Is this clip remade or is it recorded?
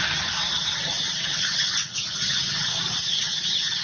remade